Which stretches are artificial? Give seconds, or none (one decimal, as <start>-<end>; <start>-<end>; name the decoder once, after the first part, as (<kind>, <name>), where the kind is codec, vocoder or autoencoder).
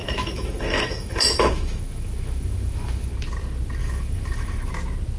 0.0-3.1 (autoencoder, DAC-VAE); 3.8-4.7